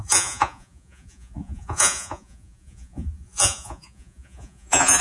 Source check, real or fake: fake